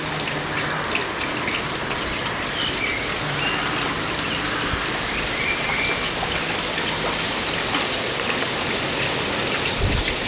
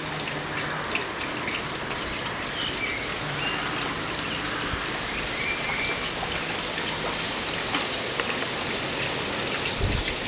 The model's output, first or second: first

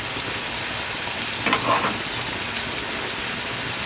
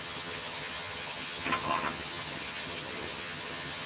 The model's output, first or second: second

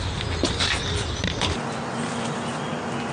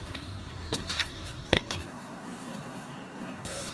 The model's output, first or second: second